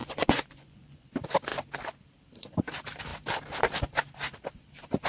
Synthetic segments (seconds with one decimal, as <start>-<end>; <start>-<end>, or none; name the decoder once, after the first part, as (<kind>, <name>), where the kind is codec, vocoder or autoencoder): 0.0-1.1 (vocoder, Vocos)